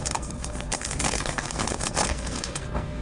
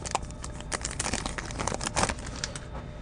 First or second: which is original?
second